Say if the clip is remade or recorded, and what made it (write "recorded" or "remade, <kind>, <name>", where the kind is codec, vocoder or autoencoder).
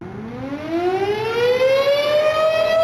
recorded